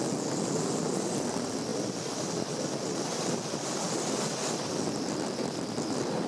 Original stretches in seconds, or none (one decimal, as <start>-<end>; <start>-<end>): 0.0-6.3